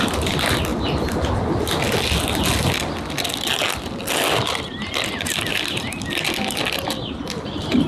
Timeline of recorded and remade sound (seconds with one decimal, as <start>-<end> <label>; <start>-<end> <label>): 0.0-7.9 recorded